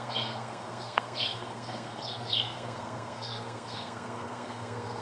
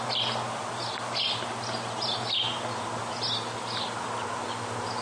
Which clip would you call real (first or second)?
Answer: second